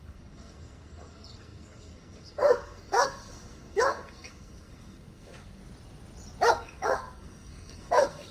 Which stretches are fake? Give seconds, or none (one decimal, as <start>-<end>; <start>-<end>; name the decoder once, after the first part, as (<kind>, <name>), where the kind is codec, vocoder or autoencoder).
0.0-5.6 (codec, SNAC); 6.5-8.3